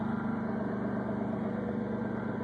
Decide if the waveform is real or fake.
real